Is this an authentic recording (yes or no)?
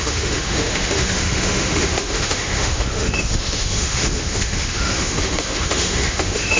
no